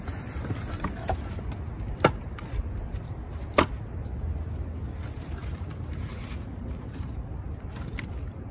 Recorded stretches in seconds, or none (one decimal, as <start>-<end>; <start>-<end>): 0.0-5.4; 7.2-8.5

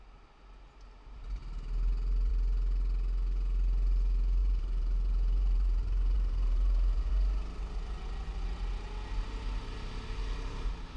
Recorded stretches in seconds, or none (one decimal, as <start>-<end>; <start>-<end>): 0.0-4.4; 7.1-11.0

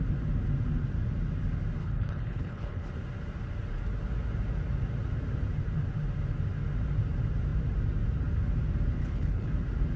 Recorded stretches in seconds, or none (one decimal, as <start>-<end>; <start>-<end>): 0.0-1.8; 2.9-9.0; 9.5-10.0

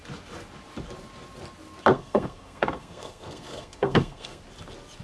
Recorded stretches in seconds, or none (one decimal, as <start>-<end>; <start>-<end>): 0.0-1.9; 4.4-5.0

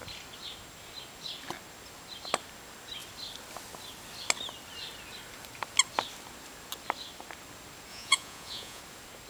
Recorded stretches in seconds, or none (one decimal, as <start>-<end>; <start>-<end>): 0.0-7.9; 8.8-9.3

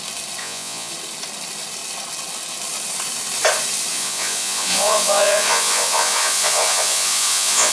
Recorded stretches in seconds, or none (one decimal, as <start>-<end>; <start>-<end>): 0.0-0.4; 0.9-3.9